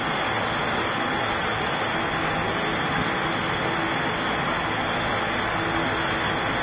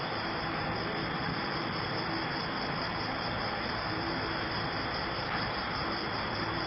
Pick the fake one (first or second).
second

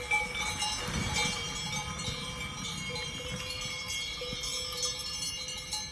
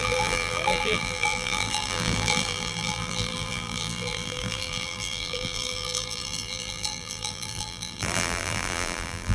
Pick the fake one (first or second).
second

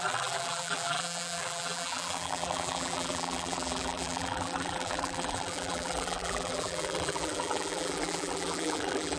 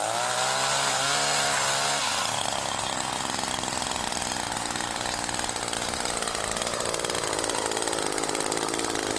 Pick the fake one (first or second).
first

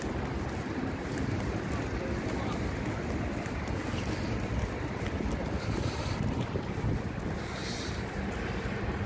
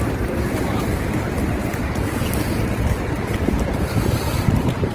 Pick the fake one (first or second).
second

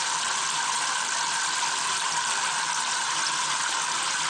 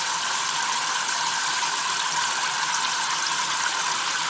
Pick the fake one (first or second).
second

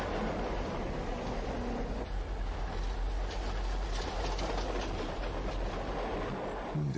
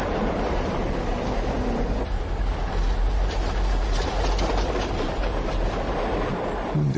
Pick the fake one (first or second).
second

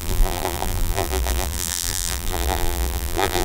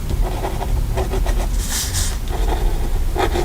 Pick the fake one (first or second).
first